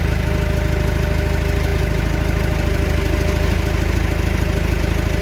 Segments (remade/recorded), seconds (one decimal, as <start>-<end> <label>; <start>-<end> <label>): 0.0-5.2 recorded